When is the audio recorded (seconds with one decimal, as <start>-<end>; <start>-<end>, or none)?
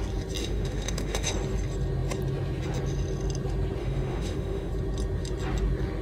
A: 0.0-0.4; 1.3-3.8; 4.7-6.0